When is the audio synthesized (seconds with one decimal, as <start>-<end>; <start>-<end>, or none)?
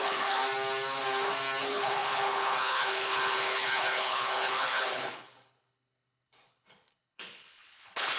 0.0-0.4; 1.6-8.2